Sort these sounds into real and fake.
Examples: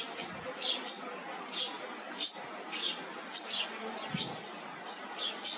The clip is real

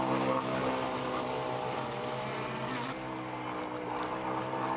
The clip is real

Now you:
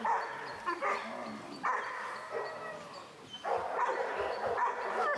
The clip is real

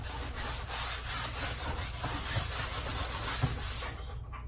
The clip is real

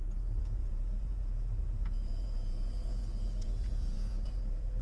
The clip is fake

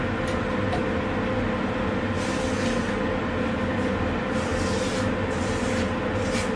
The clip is real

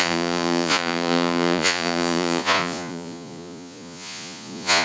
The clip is fake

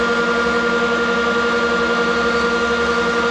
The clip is real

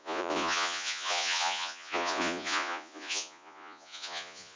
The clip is fake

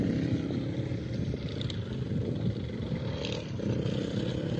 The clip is real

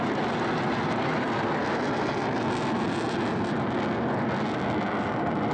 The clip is real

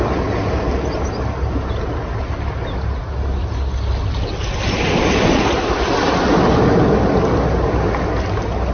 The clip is real